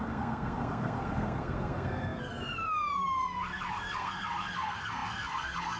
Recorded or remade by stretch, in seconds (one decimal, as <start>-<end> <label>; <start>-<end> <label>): 0.0-5.8 remade